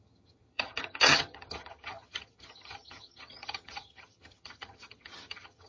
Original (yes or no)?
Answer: no